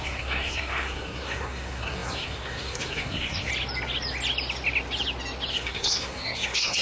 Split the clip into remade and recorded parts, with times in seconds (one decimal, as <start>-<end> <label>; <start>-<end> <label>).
0.0-3.5 remade; 3.5-5.5 recorded; 5.5-6.8 remade